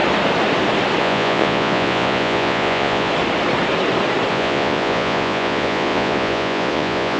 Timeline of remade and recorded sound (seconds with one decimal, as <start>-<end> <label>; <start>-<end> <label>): 0.0-1.0 recorded; 1.0-3.1 remade; 3.1-4.3 recorded; 4.3-7.2 remade